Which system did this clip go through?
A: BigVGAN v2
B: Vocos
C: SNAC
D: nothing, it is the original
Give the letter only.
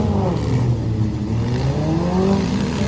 D